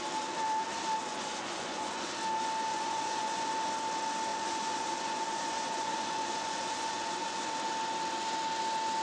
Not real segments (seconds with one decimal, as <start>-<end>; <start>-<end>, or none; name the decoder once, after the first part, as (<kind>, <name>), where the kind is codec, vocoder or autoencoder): 1.0-2.1 (vocoder, Vocos); 2.7-3.5; 4.3-7.5